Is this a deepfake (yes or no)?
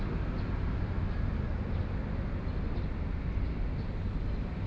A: no